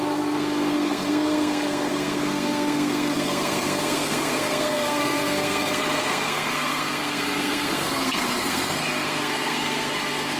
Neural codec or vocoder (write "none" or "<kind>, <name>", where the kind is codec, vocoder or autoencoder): codec, SNAC